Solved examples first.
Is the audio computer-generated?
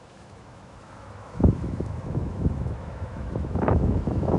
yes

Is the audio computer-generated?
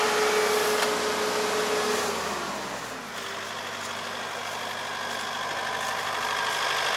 no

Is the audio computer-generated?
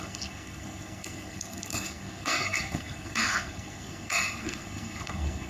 yes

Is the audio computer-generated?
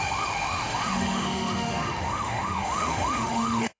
yes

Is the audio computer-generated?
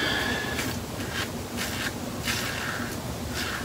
no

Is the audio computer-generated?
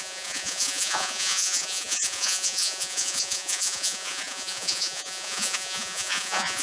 yes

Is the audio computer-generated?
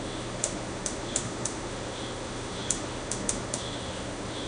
yes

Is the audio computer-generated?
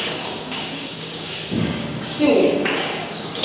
yes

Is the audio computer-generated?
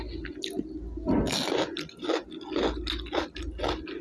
no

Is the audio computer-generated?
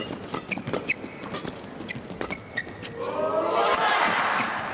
no